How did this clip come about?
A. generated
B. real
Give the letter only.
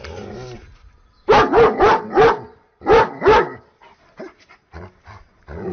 B